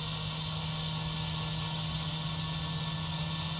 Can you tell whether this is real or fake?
real